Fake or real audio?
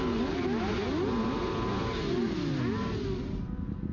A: real